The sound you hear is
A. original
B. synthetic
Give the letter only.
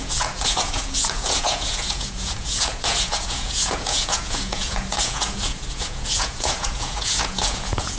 B